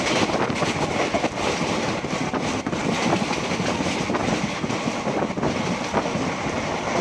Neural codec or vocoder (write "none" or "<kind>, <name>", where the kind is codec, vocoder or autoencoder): none